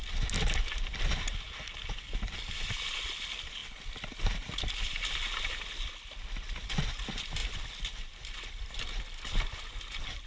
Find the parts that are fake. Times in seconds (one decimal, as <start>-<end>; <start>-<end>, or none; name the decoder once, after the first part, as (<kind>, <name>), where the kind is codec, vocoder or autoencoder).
none